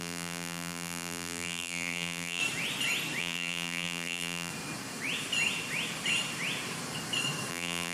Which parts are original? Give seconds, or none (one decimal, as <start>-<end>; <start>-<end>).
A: 2.4-3.2; 4.5-7.5